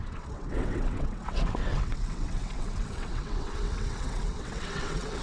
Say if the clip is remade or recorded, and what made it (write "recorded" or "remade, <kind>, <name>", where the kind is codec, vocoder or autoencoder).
remade, vocoder, WaveNeXt